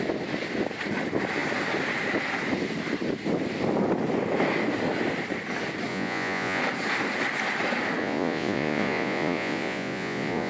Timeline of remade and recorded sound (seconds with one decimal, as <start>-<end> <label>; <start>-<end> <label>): 0.0-5.9 recorded; 5.9-6.6 remade; 6.6-8.0 recorded; 8.0-10.5 remade